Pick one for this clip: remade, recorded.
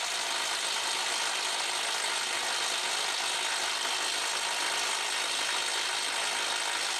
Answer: recorded